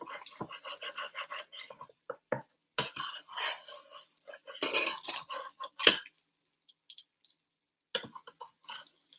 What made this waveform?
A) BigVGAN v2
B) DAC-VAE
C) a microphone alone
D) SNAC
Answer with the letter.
C